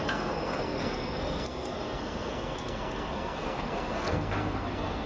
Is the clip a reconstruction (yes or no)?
yes